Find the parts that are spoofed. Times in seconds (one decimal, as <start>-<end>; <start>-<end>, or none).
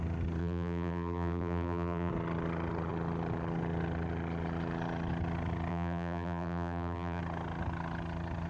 0.4-2.1; 5.7-7.2